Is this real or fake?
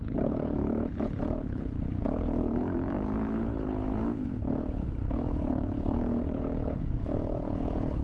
fake